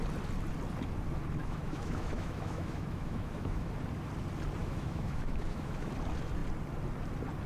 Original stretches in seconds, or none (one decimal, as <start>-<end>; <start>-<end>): 0.0-1.4; 3.7-4.6; 5.9-7.5